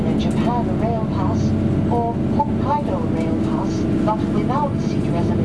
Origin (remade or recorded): recorded